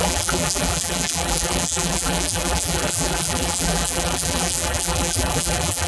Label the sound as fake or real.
fake